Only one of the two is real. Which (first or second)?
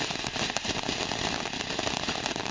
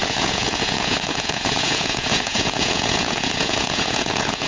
first